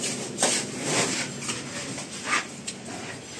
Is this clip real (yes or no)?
yes